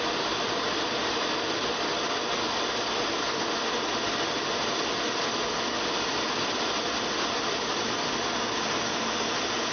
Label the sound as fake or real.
real